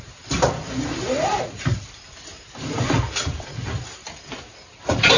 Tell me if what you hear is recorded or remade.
recorded